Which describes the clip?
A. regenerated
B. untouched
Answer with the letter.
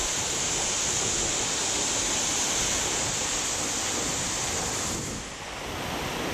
B